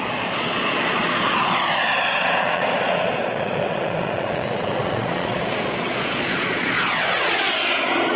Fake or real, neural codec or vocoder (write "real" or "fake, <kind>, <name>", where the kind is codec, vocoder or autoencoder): fake, vocoder, Vocos